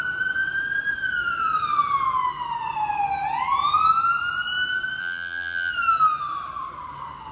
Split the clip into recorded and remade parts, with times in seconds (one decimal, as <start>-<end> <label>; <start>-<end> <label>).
0.0-5.0 recorded; 5.0-5.7 remade; 5.7-7.3 recorded